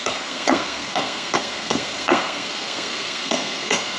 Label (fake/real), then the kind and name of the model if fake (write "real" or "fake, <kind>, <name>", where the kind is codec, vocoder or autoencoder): fake, codec, SNAC